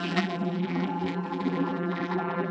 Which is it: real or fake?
fake